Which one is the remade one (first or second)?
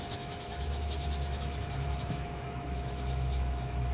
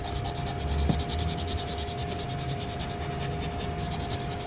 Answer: first